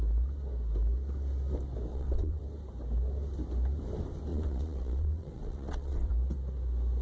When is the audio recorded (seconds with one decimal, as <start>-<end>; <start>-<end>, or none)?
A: 0.0-1.9; 2.4-4.3; 6.1-7.0